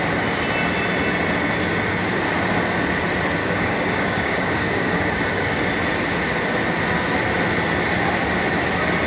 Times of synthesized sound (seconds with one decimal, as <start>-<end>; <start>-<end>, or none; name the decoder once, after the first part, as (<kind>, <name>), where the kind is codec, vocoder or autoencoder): 3.4-5.7 (codec, DAC)